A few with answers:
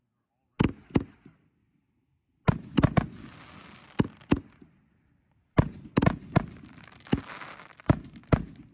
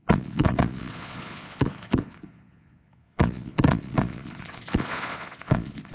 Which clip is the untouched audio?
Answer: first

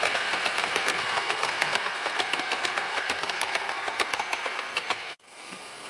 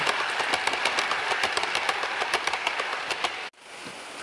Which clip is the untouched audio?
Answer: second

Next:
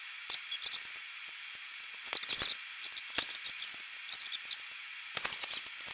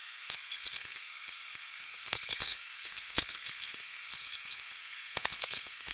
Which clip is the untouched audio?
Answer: first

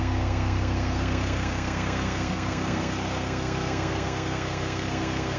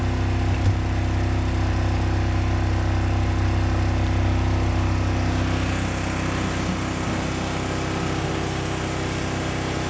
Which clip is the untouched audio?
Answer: second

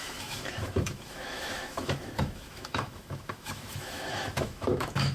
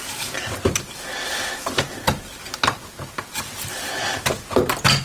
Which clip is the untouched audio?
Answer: second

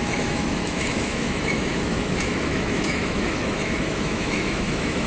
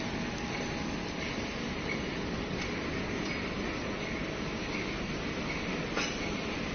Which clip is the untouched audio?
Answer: second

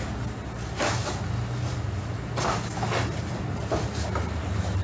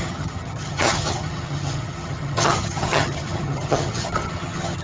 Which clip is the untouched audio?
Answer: first